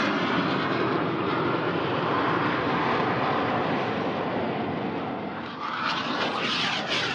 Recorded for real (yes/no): yes